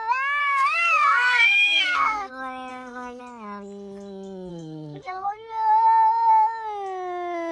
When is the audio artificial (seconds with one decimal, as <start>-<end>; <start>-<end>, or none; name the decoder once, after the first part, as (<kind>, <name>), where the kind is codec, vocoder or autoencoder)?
0.4-2.3 (codec, SNAC); 2.7-3.2; 4.5-5.5

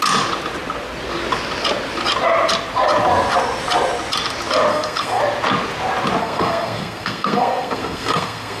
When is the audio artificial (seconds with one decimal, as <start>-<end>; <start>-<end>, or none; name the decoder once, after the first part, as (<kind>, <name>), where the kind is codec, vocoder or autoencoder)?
4.7-5.2 (codec, SNAC); 6.2-8.6

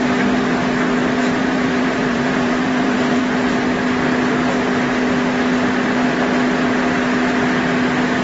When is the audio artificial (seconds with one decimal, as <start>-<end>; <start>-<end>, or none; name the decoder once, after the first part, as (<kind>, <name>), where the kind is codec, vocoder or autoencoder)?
1.4-3.2 (vocoder, BigVGAN v2)

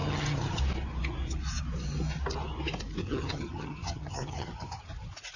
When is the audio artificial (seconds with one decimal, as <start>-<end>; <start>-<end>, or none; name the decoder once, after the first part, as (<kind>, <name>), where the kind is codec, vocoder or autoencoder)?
0.0-0.6 (vocoder, HiFi-GAN); 3.0-4.9

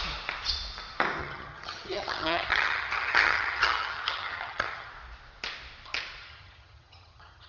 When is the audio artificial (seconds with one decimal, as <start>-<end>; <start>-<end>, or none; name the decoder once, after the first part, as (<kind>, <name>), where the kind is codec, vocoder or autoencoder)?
1.2-4.9 (vocoder, HiFi-GAN); 6.2-7.5

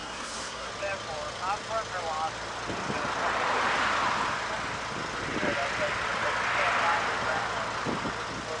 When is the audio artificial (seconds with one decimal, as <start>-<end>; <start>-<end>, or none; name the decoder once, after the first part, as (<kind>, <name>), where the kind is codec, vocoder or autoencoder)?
0.0-0.7 (codec, SNAC)

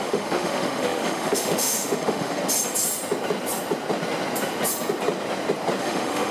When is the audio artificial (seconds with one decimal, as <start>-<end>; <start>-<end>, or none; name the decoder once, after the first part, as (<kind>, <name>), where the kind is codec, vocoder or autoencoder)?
0.0-2.4 (autoencoder, DAC-VAE); 5.8-6.3